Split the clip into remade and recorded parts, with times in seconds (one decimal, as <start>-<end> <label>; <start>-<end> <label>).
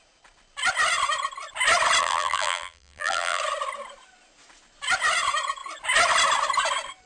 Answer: 0.0-2.0 recorded; 2.0-3.4 remade; 3.4-7.1 recorded